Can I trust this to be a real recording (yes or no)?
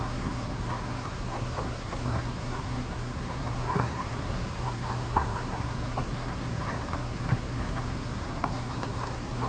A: no